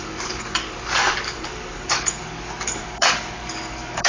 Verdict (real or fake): fake